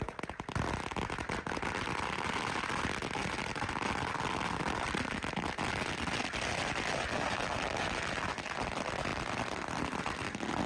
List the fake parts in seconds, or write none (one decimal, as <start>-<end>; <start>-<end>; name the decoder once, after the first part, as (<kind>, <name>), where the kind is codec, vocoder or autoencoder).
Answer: none